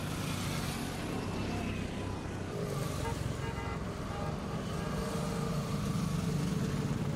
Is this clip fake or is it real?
real